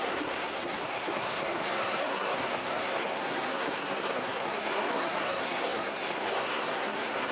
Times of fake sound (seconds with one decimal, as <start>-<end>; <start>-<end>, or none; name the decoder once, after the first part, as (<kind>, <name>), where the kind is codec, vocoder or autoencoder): 0.0-7.3 (codec, SNAC)